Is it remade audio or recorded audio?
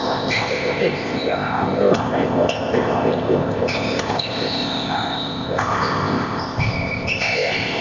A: remade